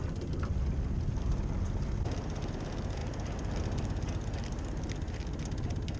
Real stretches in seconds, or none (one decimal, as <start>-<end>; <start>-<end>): 0.0-6.0

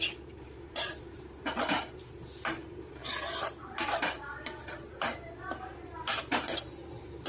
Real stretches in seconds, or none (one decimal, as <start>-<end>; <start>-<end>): 3.0-3.6

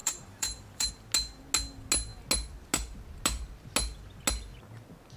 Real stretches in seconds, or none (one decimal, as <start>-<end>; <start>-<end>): 0.9-5.2

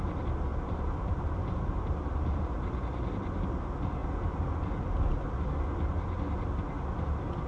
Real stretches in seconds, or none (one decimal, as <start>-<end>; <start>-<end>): 0.0-0.5; 2.4-7.5

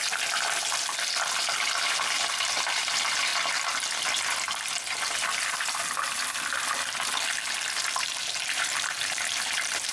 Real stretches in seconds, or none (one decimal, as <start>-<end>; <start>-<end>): 0.0-1.7; 3.3-8.0

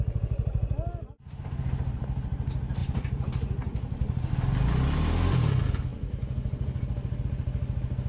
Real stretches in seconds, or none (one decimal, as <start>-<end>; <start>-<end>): 0.0-2.8; 4.3-8.1

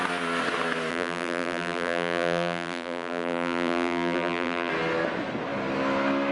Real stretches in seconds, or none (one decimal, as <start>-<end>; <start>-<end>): 0.0-0.9; 4.7-6.3